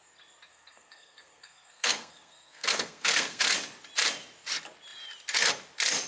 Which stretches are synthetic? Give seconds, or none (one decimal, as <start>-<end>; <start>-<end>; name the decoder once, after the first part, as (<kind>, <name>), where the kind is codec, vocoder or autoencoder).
0.5-3.4 (codec, SNAC)